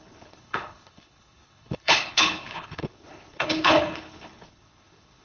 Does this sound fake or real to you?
fake